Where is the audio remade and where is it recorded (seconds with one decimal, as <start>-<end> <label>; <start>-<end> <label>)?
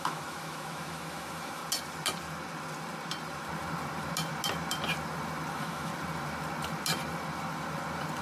0.0-1.6 remade; 1.6-5.5 recorded; 5.5-5.9 remade; 5.9-8.2 recorded